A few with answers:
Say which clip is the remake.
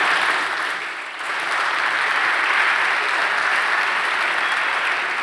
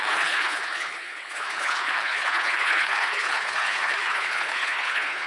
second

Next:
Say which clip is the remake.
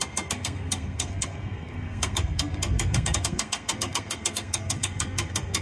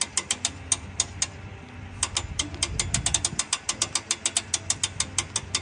first